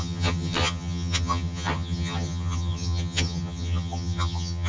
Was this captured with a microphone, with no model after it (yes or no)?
no